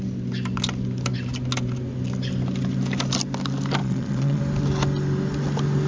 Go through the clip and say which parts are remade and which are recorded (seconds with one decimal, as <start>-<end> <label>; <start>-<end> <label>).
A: 0.0-3.8 recorded; 3.8-4.4 remade; 4.4-5.9 recorded